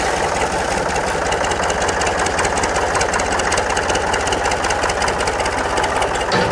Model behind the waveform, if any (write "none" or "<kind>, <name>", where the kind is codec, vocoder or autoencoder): none